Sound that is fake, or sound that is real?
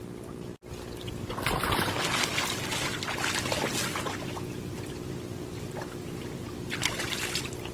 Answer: real